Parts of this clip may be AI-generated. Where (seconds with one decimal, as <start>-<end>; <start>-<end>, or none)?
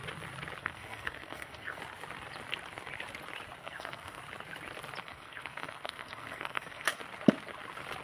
0.6-1.8; 3.6-4.2; 5.0-7.0